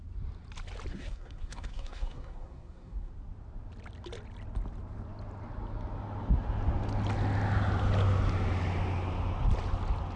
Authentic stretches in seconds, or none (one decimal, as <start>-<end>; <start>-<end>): 0.0-0.9; 3.1-10.2